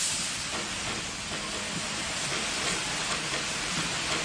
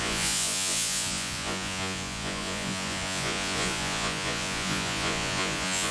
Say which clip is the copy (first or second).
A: second